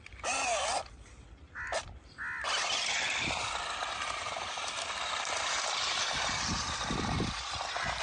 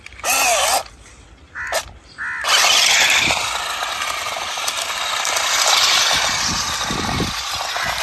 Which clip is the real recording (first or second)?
second